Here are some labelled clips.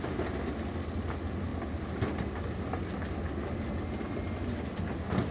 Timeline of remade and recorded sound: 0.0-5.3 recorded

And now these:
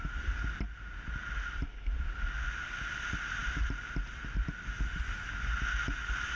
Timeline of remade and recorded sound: 0.0-6.4 recorded

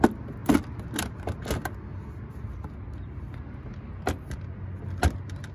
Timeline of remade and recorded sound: 0.0-5.5 recorded

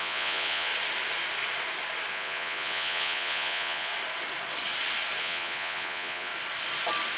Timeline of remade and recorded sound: 0.0-0.7 remade; 0.7-2.1 recorded; 2.1-3.9 remade; 3.9-5.2 recorded; 5.2-6.3 remade; 6.3-7.2 recorded